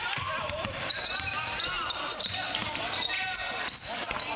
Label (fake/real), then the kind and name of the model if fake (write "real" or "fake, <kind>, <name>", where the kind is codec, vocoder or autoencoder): real